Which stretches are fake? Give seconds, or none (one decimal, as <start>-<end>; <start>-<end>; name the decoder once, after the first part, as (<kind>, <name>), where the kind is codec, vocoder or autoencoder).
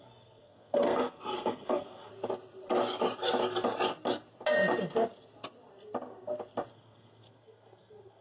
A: 0.0-2.1 (codec, SNAC); 6.7-8.2